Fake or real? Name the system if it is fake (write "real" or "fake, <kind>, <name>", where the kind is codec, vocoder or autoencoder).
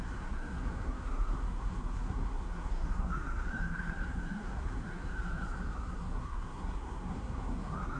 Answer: fake, codec, SNAC